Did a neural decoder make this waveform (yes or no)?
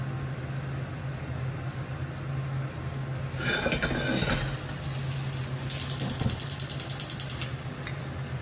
no